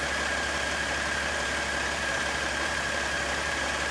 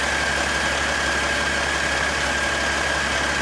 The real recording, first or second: second